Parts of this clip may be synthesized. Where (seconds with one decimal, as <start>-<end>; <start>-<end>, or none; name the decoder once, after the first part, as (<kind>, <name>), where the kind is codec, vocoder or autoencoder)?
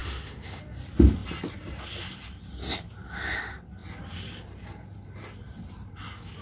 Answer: 0.0-0.6 (autoencoder, DAC-VAE)